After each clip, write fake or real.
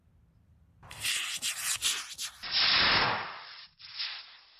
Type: real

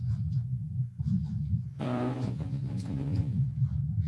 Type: fake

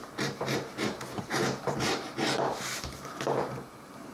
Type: fake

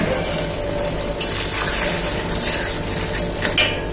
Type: real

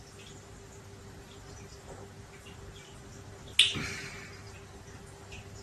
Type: real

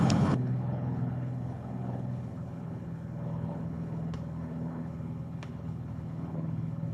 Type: fake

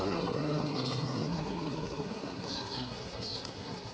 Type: fake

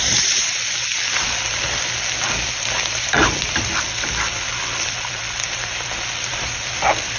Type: fake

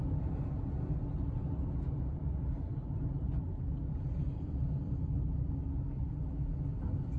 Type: real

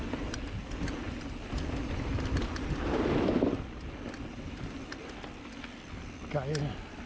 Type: real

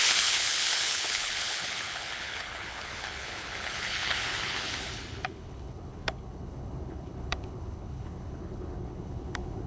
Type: fake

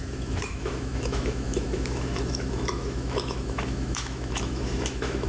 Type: fake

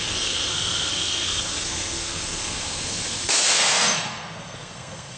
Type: fake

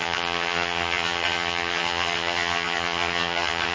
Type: fake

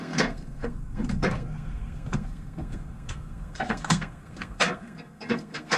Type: fake